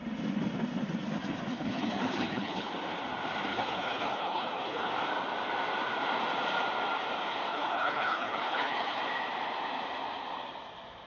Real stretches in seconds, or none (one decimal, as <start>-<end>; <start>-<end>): 0.0-1.5; 2.7-3.5; 4.9-7.5; 9.0-11.1